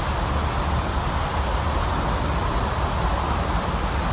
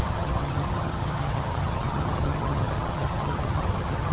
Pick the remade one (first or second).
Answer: second